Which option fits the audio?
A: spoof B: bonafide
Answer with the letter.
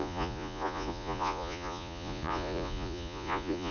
A